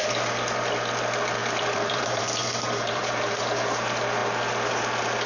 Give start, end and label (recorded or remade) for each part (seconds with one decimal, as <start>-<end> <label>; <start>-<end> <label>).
0.0-1.4 recorded; 1.4-3.4 remade; 3.4-5.3 recorded